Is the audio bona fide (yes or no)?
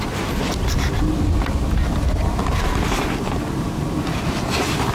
yes